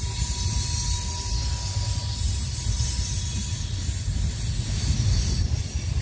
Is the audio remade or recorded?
recorded